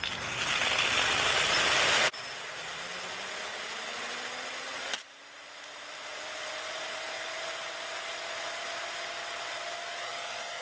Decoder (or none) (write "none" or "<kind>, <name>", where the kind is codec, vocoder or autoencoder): none